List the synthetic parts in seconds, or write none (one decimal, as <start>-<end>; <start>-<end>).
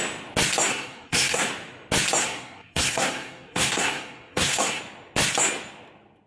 0.7-1.5; 2.2-4.8